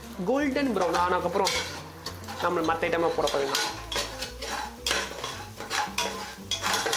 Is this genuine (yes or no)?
yes